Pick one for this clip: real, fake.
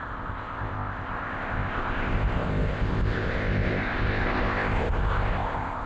fake